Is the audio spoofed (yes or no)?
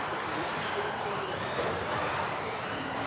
no